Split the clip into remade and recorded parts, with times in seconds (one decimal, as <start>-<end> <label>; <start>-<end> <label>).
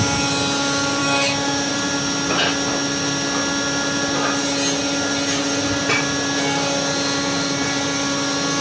0.0-1.0 recorded; 1.0-1.7 remade; 1.7-8.6 recorded